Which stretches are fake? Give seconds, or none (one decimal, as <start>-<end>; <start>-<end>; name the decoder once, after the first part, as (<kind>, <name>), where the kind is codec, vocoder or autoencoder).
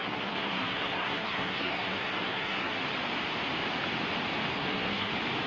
0.0-2.8 (codec, SNAC); 4.5-5.1